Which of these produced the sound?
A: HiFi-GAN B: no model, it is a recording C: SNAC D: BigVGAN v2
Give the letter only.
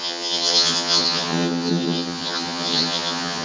A